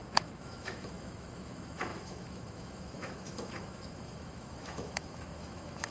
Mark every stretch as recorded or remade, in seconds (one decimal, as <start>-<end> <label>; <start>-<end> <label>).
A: 0.0-5.9 remade